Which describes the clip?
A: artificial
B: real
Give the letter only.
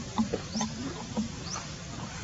A